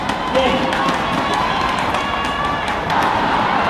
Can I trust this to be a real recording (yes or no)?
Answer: yes